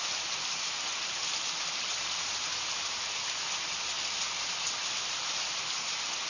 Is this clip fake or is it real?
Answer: real